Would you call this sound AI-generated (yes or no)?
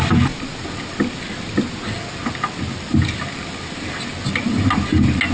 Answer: no